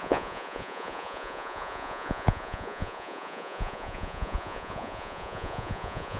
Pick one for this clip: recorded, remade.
remade